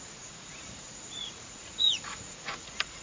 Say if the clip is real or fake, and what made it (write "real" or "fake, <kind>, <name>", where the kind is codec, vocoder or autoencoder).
fake, vocoder, Vocos